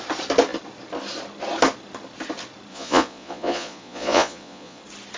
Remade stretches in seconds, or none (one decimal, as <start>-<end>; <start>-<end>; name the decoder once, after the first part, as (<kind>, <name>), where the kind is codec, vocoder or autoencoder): 2.7-4.8 (vocoder, Vocos)